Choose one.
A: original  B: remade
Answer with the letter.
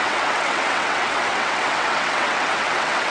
B